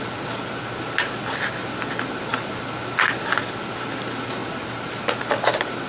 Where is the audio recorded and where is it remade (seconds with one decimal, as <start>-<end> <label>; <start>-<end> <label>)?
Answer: 0.0-4.4 recorded; 4.4-5.0 remade; 5.0-5.9 recorded